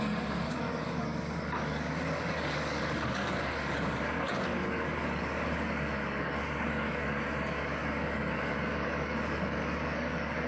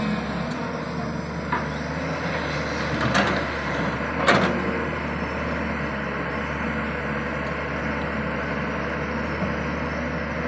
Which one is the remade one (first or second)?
first